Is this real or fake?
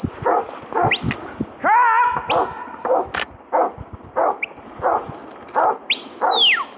real